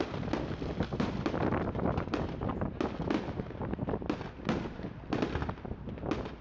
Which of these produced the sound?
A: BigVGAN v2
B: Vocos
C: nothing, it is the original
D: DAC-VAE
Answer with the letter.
C